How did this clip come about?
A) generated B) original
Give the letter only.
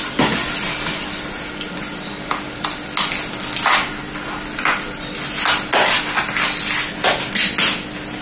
B